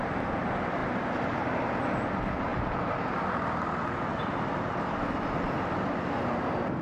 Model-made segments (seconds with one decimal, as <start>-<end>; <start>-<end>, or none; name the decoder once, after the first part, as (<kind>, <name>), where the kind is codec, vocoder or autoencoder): 2.5-3.2 (vocoder, BigVGAN v2); 4.1-5.2